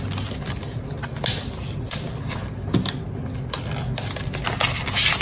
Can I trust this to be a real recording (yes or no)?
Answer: yes